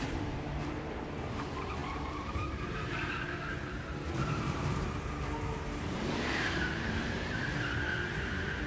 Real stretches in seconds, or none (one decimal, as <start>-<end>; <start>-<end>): none